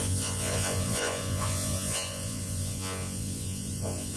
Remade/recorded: remade